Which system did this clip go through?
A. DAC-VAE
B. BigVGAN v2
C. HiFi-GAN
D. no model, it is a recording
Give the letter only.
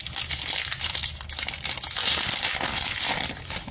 D